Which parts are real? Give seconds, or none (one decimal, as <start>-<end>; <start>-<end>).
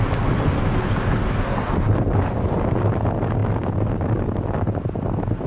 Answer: 0.0-5.5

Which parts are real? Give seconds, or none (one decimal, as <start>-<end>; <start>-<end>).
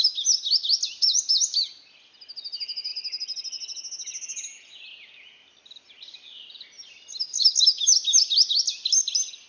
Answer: 0.0-9.5